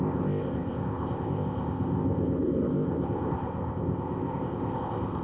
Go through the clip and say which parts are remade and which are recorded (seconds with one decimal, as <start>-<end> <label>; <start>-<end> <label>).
0.0-5.2 remade